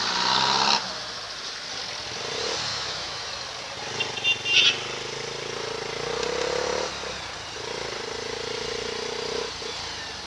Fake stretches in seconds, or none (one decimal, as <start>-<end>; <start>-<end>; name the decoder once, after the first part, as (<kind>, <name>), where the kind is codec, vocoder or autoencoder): 2.7-3.3 (autoencoder, DAC-VAE)